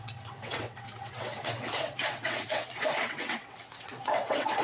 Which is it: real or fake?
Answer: fake